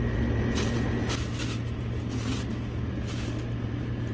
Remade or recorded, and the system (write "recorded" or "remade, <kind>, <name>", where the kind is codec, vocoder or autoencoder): recorded